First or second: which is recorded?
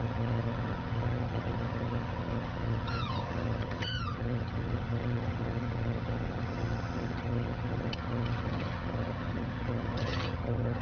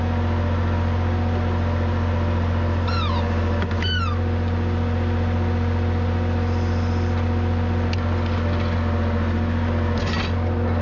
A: second